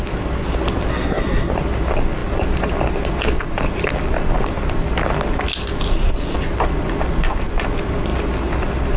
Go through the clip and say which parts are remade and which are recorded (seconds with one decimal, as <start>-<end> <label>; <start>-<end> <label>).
0.0-0.9 recorded; 0.9-1.5 remade; 1.5-9.0 recorded